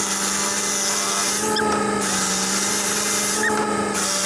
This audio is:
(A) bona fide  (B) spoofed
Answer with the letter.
A